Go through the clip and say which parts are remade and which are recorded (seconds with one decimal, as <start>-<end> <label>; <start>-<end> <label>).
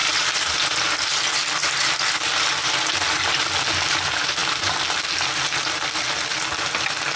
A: 0.0-4.4 recorded; 4.4-5.0 remade; 5.0-7.2 recorded